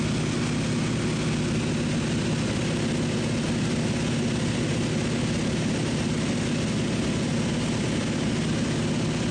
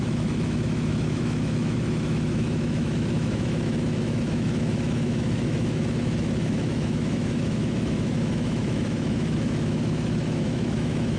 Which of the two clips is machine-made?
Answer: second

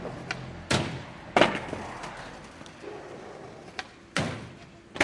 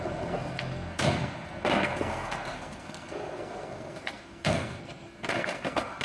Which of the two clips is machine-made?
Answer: second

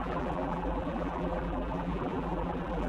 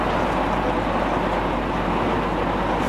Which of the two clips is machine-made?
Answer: first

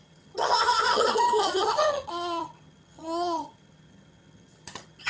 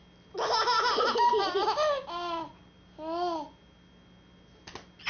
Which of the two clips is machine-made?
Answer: first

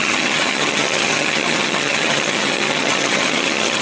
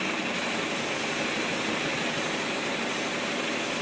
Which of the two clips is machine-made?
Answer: first